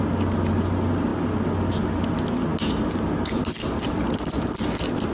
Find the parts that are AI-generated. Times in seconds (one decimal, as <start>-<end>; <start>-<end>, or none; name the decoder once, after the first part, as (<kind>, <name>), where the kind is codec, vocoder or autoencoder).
none